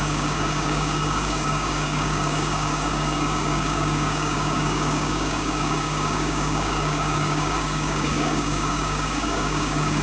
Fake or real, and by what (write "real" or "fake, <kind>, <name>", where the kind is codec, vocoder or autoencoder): fake, codec, DAC